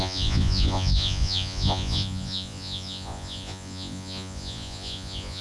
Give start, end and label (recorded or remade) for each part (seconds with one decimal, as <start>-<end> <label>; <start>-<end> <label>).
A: 0.0-5.4 remade